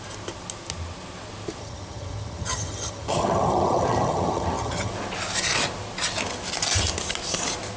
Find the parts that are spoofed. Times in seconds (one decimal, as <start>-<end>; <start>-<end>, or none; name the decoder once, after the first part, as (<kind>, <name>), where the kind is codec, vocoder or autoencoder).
1.6-4.9 (vocoder, HiFi-GAN)